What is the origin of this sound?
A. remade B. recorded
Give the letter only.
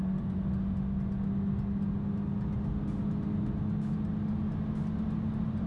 B